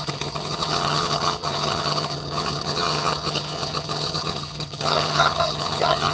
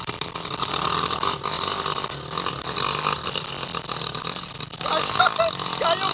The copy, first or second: first